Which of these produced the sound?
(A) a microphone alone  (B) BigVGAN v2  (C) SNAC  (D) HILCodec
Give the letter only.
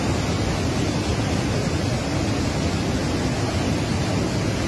A